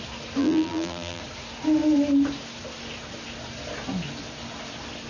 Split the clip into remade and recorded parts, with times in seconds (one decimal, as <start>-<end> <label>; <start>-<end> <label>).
0.0-0.4 recorded; 0.4-1.2 remade; 1.2-5.1 recorded